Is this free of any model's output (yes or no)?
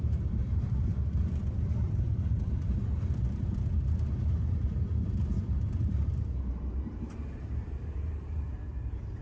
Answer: no